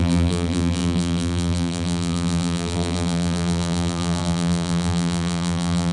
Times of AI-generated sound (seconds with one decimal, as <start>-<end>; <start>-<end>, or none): 0.0-5.9